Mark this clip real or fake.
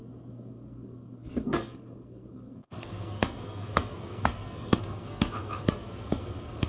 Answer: fake